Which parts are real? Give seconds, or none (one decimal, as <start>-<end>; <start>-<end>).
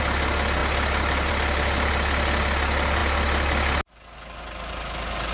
0.0-5.3